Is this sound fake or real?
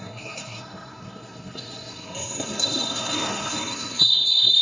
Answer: fake